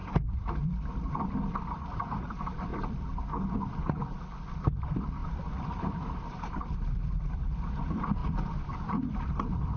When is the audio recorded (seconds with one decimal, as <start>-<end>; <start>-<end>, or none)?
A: 0.0-1.1; 2.7-4.8